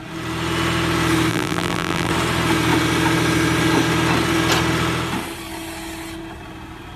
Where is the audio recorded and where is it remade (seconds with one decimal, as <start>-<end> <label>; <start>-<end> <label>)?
0.0-1.3 recorded; 1.3-2.1 remade; 2.1-7.0 recorded